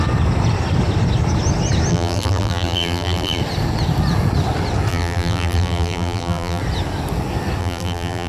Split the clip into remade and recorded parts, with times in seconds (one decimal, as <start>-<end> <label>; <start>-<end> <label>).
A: 0.0-1.9 recorded; 1.9-3.4 remade; 3.4-4.9 recorded; 4.9-6.6 remade; 6.6-7.6 recorded; 7.6-8.3 remade